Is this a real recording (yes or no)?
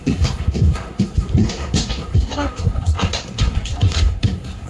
no